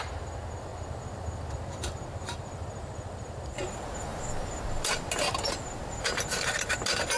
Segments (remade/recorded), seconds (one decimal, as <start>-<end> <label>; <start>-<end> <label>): 0.0-7.2 recorded